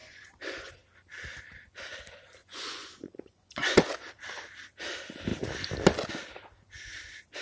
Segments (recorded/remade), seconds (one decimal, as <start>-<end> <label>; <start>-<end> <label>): 0.0-0.7 remade; 0.7-2.4 recorded; 2.4-3.9 remade; 3.9-7.4 recorded